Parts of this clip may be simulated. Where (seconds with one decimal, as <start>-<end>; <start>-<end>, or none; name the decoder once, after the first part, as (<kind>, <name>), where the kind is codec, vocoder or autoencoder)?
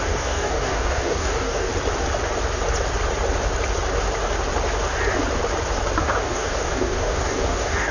0.0-1.7 (codec, DAC); 6.0-7.9